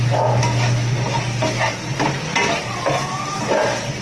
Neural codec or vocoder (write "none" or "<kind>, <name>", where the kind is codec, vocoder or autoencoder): none